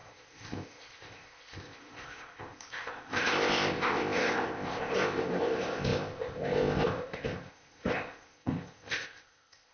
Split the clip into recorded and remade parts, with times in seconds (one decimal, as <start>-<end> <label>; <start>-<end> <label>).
0.0-9.7 remade